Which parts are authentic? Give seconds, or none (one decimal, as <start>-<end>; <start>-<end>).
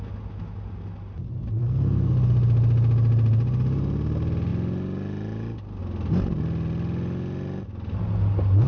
0.0-1.6; 2.1-8.7